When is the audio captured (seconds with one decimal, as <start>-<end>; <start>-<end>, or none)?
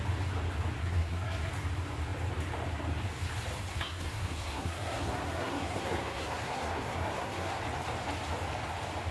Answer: 0.0-0.8; 1.5-3.7; 7.6-9.1